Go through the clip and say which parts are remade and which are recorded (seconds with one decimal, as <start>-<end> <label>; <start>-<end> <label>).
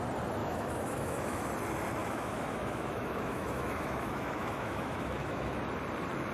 0.0-0.4 recorded; 0.4-1.5 remade; 1.5-2.0 recorded; 2.0-5.6 remade; 5.6-6.3 recorded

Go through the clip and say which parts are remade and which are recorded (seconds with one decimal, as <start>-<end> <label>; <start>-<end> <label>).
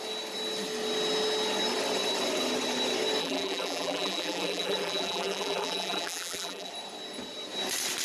0.0-3.2 recorded; 3.2-6.7 remade; 6.7-8.0 recorded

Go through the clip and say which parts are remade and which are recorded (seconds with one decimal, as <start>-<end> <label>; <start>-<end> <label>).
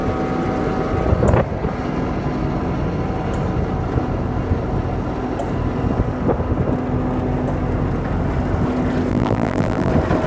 0.0-9.1 recorded; 9.1-9.9 remade; 9.9-10.3 recorded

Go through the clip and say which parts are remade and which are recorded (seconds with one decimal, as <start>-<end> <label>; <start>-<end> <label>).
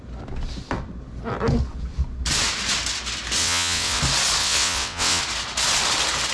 0.0-3.4 recorded; 3.4-4.0 remade; 4.0-4.4 recorded; 4.4-5.2 remade; 5.2-6.3 recorded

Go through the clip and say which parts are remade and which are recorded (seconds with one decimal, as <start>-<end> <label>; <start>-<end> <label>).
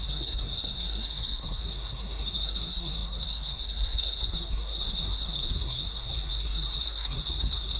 0.0-7.8 remade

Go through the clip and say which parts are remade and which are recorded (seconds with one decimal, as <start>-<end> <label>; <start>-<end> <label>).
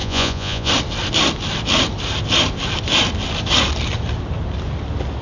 0.0-0.7 remade; 0.7-5.2 recorded